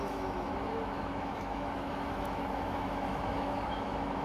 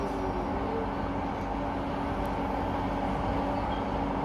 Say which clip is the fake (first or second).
first